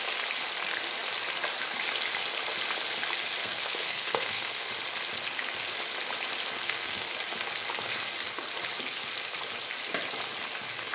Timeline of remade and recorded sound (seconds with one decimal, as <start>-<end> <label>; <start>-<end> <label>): 0.0-3.4 recorded; 3.4-4.7 remade; 4.7-6.6 recorded; 6.6-7.1 remade; 7.1-10.9 recorded